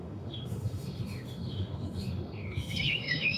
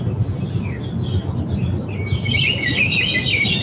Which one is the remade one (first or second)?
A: first